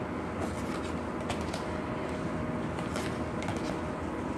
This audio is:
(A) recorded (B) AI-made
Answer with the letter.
A